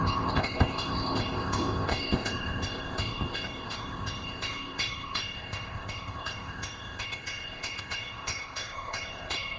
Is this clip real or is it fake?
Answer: fake